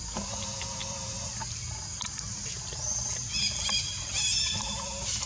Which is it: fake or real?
real